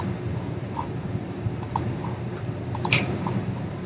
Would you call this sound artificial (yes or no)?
yes